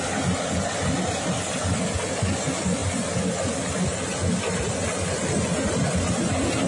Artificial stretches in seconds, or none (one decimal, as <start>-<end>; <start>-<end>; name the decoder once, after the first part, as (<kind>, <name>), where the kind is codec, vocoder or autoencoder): none